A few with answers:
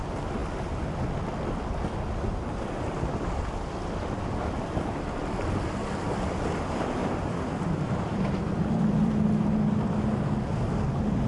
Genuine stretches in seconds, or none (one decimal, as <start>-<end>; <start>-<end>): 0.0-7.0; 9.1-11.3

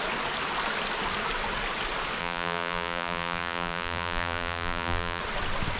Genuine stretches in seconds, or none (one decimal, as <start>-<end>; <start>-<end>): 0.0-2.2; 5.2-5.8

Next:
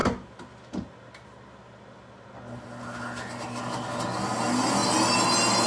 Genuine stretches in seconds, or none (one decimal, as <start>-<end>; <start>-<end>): 0.0-5.7